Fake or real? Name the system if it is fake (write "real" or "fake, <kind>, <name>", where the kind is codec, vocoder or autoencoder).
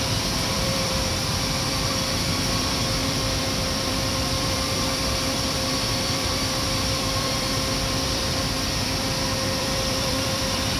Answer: fake, vocoder, BigVGAN v2